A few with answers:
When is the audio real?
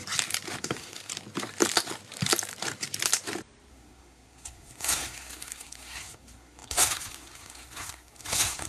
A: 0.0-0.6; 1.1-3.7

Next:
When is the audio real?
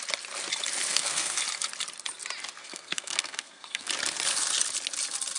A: 0.0-0.9; 1.4-2.6; 3.9-5.4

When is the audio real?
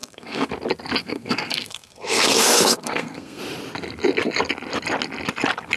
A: 0.5-1.0; 3.4-5.8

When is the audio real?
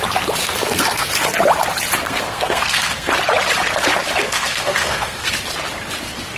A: 0.0-0.4; 1.1-2.0; 3.1-4.2; 5.3-6.4